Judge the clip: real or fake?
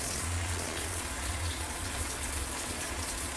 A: fake